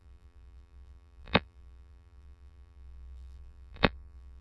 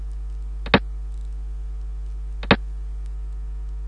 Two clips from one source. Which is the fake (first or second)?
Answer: first